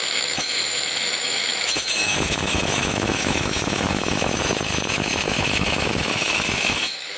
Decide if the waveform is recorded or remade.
remade